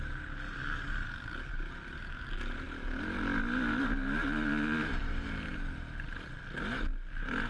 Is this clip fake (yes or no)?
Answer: no